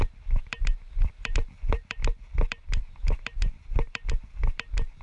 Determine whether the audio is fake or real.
fake